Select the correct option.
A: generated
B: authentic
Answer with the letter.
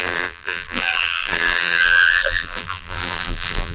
A